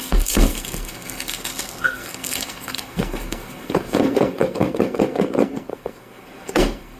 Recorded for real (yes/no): no